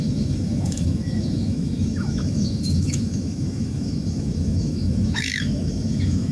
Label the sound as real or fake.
fake